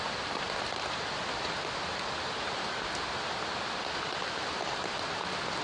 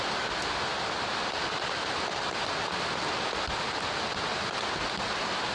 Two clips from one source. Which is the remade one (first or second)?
first